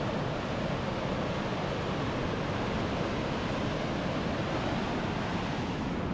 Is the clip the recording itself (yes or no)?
yes